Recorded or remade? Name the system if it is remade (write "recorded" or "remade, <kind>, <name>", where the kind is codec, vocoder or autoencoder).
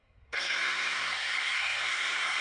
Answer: remade, codec, SNAC